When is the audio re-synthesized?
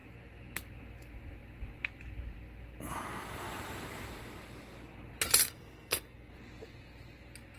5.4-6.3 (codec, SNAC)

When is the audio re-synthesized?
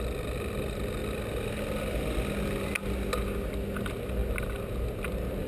none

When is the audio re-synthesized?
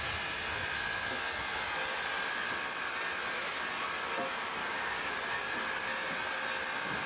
4.6-5.4 (codec, DAC)